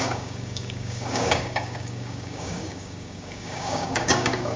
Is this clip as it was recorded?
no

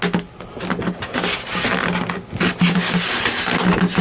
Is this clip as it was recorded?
yes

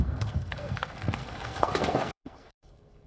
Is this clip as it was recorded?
no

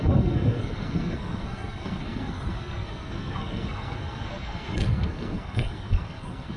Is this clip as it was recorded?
no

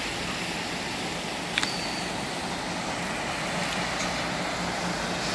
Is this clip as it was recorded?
yes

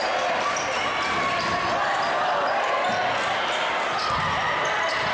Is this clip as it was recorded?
yes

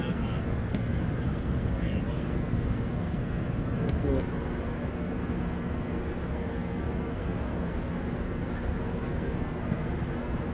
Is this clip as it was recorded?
no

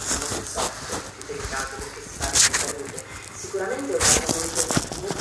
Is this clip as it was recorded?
yes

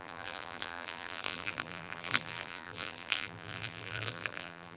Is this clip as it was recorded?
no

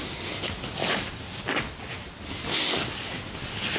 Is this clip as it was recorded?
yes